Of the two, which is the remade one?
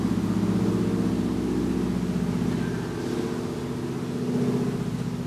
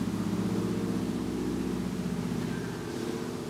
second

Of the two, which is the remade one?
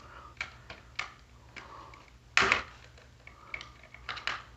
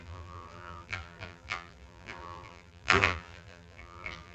second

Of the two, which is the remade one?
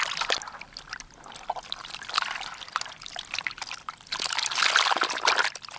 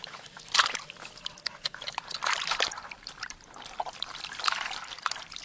second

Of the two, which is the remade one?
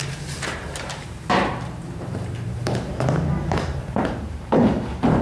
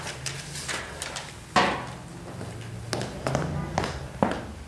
first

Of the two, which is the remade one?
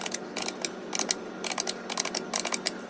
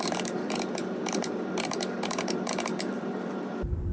second